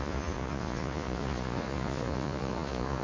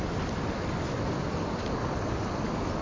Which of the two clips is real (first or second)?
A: second